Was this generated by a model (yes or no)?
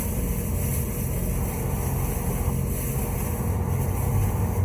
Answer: no